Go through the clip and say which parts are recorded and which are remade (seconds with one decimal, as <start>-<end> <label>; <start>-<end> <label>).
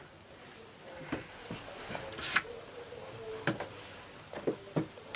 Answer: 0.0-5.2 recorded